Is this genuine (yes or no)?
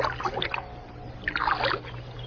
yes